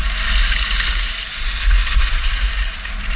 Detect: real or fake real